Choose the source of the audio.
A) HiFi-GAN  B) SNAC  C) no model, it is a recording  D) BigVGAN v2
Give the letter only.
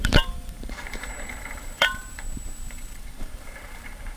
D